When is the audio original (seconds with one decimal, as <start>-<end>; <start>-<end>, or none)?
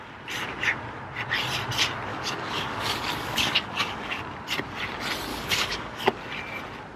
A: 0.0-2.1; 4.2-5.3; 6.2-7.0